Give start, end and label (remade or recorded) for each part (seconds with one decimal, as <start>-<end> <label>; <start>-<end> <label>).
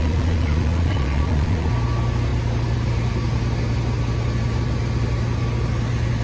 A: 0.0-1.7 remade; 1.7-6.2 recorded